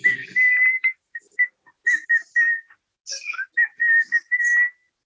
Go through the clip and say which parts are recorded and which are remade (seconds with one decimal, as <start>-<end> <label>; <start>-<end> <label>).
0.0-5.1 recorded